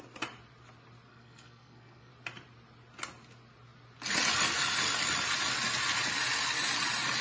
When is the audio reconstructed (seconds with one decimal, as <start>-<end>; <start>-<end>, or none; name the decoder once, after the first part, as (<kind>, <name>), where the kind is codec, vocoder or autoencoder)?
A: 1.1-2.1 (codec, SNAC)